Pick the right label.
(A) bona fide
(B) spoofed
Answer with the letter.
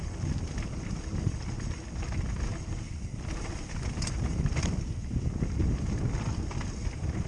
A